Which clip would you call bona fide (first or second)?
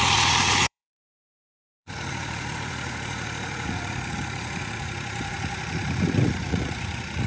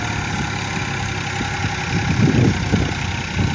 second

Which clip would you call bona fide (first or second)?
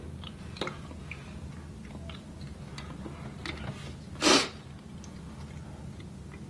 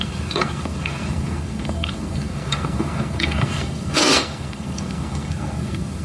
first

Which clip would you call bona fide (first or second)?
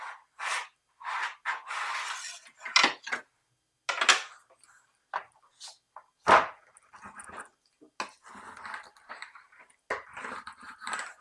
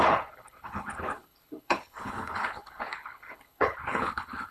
first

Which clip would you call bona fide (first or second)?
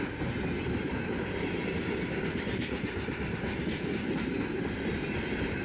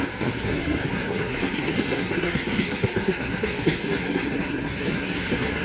first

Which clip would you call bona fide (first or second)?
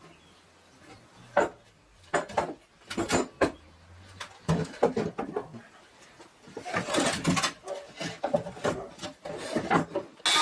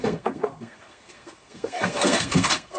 first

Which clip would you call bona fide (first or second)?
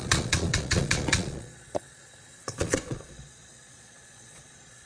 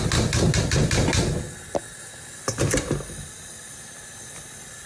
second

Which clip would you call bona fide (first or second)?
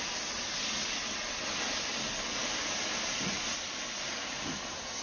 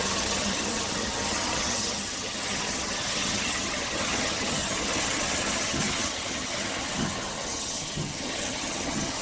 first